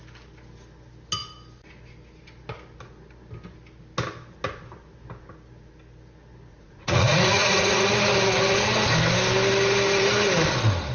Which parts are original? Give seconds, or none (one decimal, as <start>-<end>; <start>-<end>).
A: 0.0-6.5; 7.9-10.9